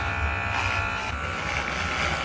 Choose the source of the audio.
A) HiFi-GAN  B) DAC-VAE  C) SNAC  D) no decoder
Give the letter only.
D